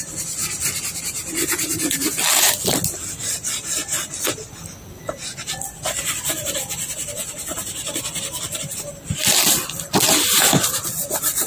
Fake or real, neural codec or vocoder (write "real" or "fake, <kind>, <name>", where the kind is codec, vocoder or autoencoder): real